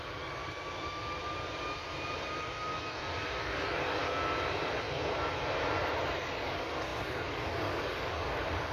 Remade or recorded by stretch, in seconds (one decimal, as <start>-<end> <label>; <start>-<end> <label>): 0.0-0.4 remade; 0.4-3.4 recorded; 3.4-4.0 remade; 4.0-6.0 recorded; 6.0-8.7 remade